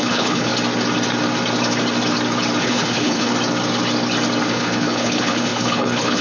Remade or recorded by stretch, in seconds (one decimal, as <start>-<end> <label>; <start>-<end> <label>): 0.0-0.5 remade; 0.5-2.6 recorded; 2.6-3.3 remade; 3.3-4.5 recorded; 4.5-6.2 remade